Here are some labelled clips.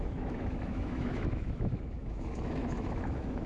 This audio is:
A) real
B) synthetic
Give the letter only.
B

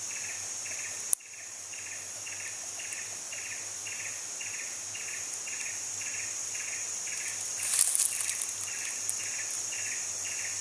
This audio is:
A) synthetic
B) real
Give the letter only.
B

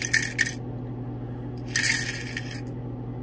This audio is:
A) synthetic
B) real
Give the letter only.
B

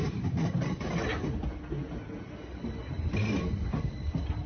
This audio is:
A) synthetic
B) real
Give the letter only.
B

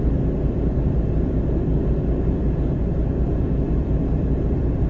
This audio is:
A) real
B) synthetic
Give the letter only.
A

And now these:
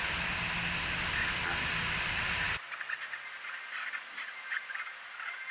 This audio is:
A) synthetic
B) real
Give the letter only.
B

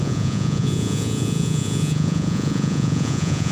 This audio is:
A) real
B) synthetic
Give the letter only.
B